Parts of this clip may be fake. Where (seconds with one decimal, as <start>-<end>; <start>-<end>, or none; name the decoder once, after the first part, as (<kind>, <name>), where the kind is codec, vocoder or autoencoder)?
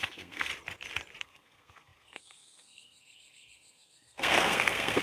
0.0-0.5 (codec, SNAC); 1.2-5.0